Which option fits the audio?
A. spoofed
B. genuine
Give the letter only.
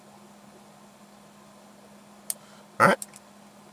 B